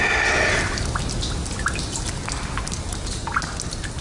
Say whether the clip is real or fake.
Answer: real